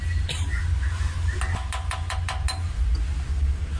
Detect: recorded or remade recorded